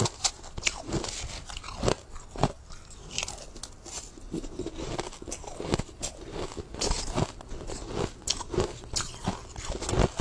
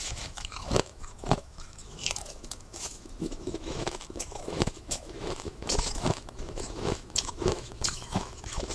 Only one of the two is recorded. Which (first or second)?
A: first